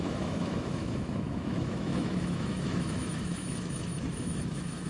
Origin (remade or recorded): remade